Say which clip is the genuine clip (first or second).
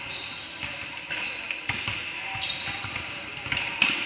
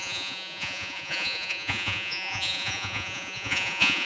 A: first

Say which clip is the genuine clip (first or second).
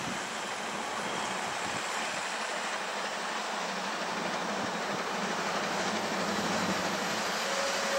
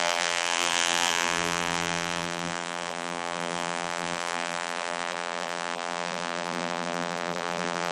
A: first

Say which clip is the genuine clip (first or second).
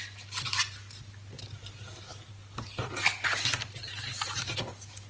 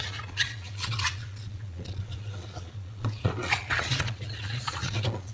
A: first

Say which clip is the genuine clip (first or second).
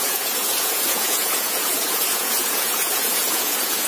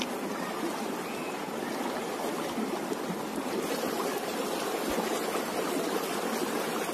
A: second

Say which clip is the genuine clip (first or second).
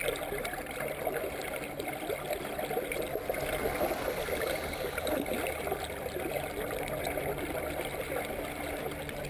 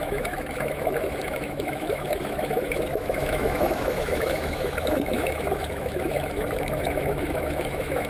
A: first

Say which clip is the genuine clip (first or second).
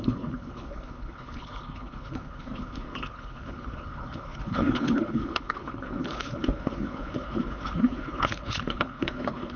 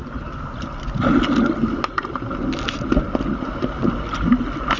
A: second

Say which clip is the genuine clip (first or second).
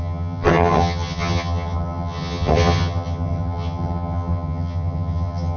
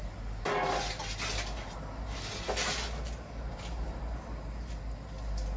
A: second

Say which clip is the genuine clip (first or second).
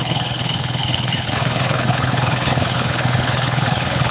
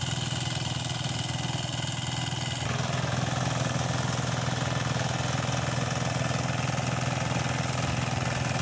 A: second